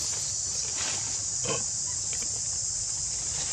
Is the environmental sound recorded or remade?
recorded